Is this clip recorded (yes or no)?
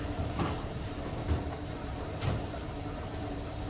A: no